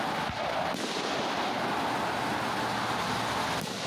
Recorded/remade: recorded